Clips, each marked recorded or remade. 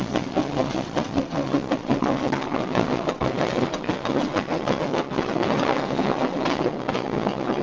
remade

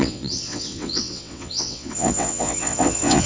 remade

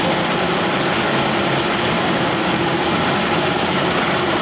recorded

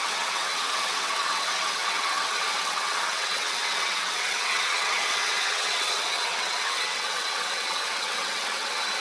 remade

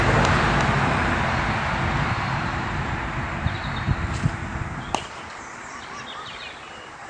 recorded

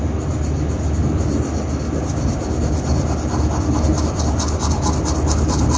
recorded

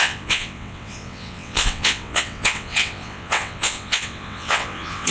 remade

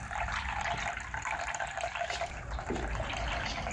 recorded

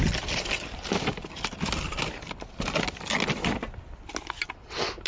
recorded